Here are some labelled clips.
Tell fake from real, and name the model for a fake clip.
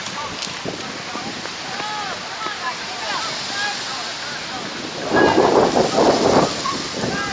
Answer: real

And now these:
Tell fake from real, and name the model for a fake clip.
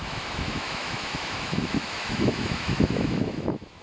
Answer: fake, autoencoder, DAC-VAE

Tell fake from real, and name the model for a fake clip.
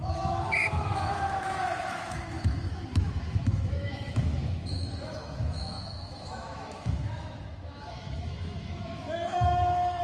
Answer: fake, autoencoder, DAC-VAE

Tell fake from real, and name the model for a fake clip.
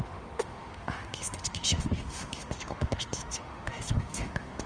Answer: fake, autoencoder, DAC-VAE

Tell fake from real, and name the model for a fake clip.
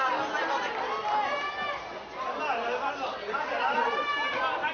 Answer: real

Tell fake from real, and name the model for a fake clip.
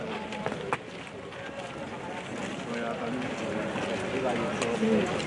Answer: real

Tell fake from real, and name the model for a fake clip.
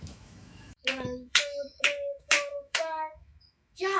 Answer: fake, autoencoder, DAC-VAE